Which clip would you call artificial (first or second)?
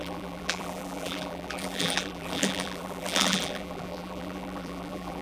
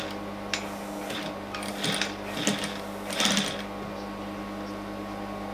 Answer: first